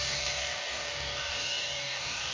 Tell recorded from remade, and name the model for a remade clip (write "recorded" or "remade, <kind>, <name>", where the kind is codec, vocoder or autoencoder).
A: remade, codec, DAC